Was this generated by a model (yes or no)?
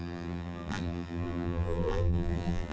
yes